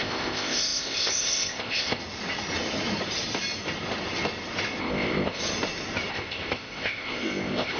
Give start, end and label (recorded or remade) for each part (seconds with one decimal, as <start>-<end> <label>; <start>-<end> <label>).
0.0-2.0 remade; 2.0-4.8 recorded; 4.8-5.4 remade; 5.4-6.1 recorded; 6.1-7.8 remade